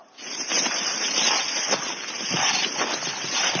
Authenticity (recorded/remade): recorded